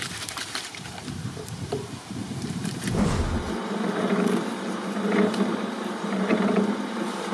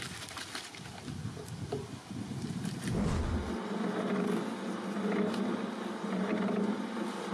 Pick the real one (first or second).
second